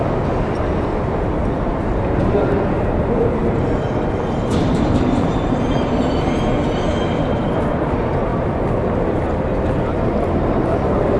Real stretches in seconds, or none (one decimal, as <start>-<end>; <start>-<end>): 1.7-2.2; 3.4-4.7; 8.3-9.9